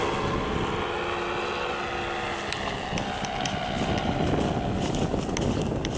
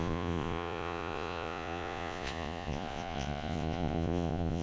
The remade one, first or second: second